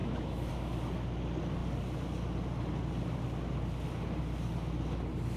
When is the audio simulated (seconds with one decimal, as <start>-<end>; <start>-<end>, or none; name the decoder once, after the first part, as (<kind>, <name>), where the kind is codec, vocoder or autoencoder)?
0.0-0.5 (autoencoder, DAC-VAE)